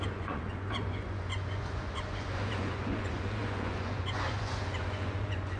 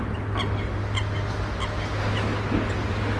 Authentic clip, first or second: second